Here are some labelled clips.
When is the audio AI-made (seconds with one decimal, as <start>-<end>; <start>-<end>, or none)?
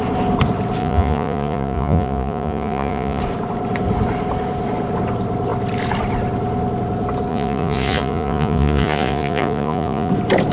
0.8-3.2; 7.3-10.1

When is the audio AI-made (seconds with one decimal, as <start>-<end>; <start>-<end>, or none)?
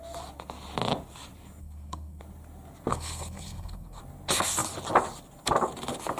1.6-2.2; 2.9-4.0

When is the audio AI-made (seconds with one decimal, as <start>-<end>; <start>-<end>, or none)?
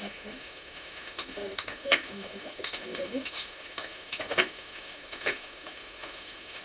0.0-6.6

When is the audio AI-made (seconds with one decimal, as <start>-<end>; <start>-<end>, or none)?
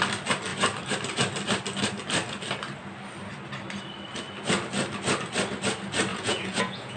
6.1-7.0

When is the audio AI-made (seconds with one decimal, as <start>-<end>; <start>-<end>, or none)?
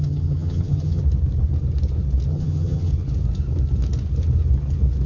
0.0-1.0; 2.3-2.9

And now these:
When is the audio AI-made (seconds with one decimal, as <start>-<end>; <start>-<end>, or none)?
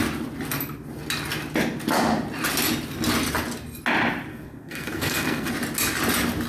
4.3-5.5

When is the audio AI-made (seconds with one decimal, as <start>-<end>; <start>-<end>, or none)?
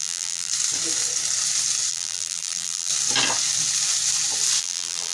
0.0-0.5; 1.9-2.9; 4.6-5.1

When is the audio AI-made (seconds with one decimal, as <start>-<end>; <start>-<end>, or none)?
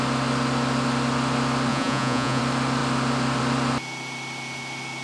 1.7-2.4